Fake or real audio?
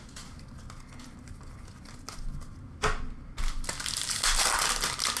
real